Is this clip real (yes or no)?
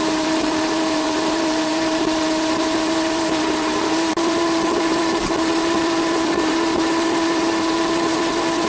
no